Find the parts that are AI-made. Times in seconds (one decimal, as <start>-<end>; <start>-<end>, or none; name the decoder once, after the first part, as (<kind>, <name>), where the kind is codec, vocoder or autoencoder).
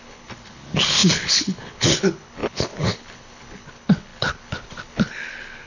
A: 0.0-5.7 (codec, HILCodec)